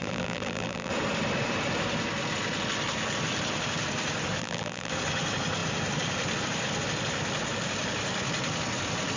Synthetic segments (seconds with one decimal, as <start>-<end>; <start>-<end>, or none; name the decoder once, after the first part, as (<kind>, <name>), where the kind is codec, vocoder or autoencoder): 0.0-0.9 (vocoder, BigVGAN v2); 4.4-4.9